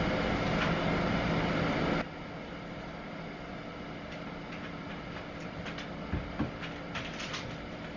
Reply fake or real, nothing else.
real